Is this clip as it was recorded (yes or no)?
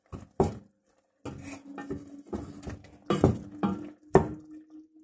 yes